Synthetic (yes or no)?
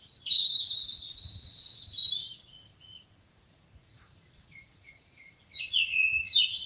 yes